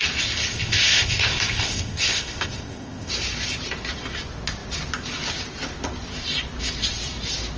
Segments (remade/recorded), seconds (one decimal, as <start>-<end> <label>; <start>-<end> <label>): 0.0-0.5 recorded; 0.5-3.1 remade; 3.1-7.6 recorded